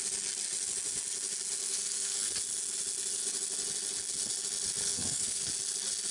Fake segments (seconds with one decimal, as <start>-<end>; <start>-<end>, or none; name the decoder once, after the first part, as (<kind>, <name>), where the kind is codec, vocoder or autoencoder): 1.7-2.3 (codec, SNAC); 4.8-5.4